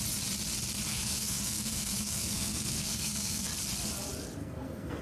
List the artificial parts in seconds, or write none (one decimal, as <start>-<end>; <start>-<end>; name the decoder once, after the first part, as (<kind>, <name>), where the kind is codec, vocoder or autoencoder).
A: 0.9-3.5 (codec, SNAC); 4.4-5.0